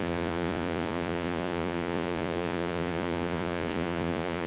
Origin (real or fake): fake